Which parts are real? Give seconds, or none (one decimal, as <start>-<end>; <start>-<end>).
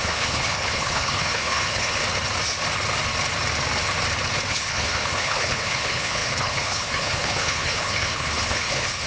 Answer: 2.0-4.5